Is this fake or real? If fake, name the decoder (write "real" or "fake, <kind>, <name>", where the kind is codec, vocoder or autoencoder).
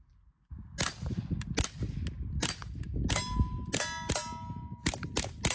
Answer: real